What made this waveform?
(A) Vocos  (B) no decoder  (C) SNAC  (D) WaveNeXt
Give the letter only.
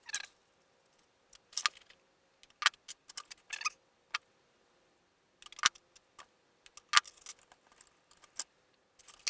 B